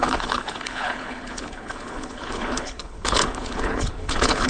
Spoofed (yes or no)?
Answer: yes